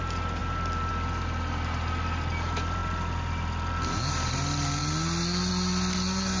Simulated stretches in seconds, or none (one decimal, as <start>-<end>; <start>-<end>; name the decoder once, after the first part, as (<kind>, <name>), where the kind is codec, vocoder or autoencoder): none